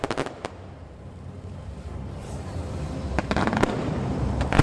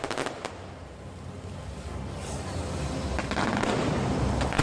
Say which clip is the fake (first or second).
first